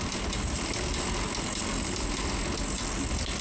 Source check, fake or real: real